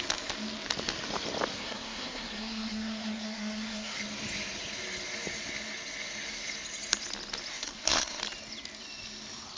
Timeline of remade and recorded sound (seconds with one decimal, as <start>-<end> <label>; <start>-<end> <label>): 0.0-1.5 recorded; 1.5-4.0 remade; 4.0-7.5 recorded; 7.5-8.2 remade; 8.2-9.6 recorded